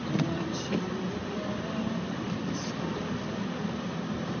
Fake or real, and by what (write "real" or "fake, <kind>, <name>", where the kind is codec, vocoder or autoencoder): fake, vocoder, BigVGAN v2